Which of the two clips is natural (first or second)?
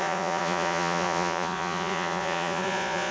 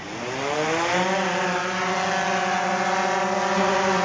second